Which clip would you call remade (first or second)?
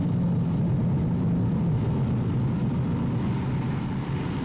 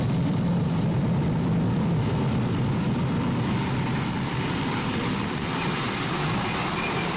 second